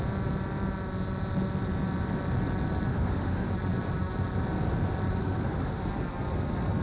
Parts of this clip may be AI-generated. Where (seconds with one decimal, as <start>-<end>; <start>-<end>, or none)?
2.9-3.5; 5.2-5.8